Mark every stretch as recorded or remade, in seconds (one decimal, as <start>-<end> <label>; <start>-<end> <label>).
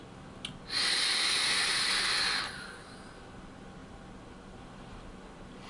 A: 0.0-5.7 recorded